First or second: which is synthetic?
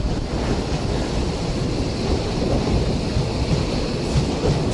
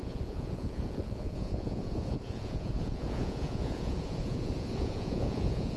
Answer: second